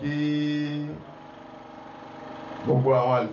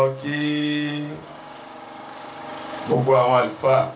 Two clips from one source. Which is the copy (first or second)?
second